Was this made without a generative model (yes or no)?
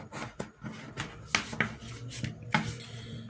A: yes